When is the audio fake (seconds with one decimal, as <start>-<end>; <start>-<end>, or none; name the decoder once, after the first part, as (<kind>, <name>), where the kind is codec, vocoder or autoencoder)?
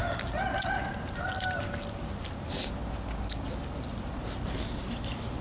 none